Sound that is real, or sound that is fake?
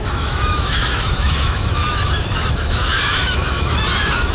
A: fake